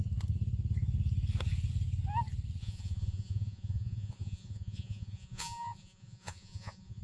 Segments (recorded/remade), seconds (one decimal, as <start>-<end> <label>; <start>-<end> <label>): 0.0-2.6 recorded; 2.6-7.0 remade